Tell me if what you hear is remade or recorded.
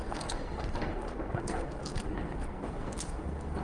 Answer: remade